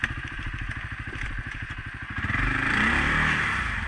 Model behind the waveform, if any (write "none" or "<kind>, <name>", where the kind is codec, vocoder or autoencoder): vocoder, BigVGAN v2